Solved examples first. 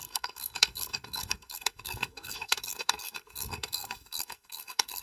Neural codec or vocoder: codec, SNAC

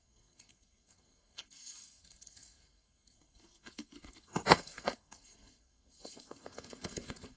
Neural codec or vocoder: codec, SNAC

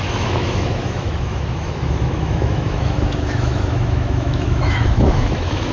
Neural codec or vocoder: autoencoder, DAC-VAE